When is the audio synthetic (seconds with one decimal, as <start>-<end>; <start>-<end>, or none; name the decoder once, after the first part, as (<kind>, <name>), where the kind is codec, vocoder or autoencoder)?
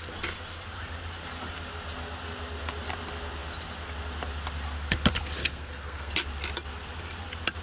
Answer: 5.4-6.1 (codec, SNAC)